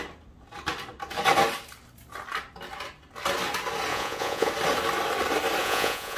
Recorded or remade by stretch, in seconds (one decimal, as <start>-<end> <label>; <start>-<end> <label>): 0.0-3.9 recorded; 3.9-4.5 remade; 4.5-5.6 recorded; 5.6-6.2 remade